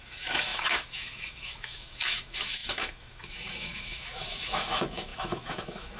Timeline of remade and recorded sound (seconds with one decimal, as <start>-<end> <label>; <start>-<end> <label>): 0.0-6.0 remade